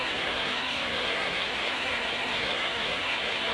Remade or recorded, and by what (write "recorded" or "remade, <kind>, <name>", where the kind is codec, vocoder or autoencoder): remade, codec, SNAC